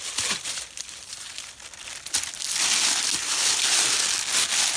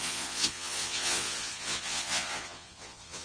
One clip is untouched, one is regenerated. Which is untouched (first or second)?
first